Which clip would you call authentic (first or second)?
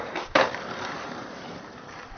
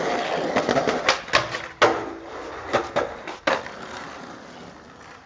second